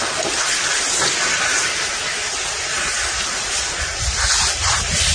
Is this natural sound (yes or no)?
yes